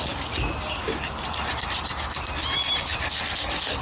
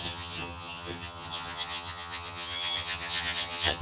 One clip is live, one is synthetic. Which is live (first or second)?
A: first